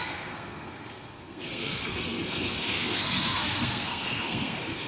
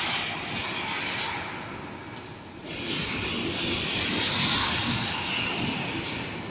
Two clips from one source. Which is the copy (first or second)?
first